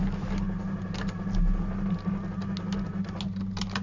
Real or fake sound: real